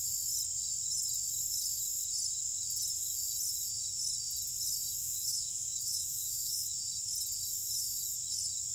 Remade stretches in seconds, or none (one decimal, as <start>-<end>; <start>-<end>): 5.0-6.7